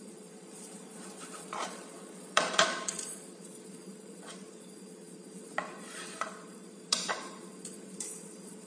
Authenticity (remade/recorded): remade